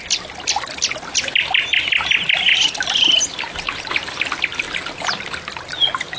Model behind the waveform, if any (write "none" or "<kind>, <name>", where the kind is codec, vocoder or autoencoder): none